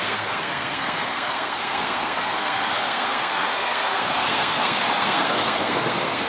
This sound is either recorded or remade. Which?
remade